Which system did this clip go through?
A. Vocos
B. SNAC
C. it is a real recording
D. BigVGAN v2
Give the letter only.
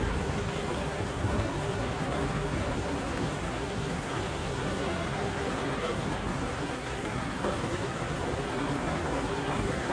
B